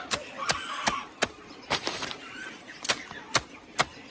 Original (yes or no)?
yes